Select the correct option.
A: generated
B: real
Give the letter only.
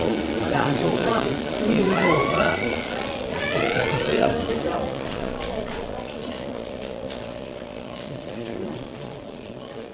A